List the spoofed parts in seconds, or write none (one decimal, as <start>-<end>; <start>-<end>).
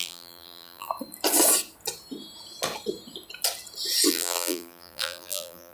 0.0-0.9; 4.1-5.7